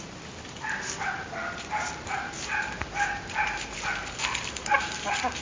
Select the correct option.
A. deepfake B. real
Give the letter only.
B